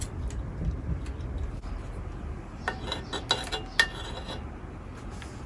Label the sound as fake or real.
real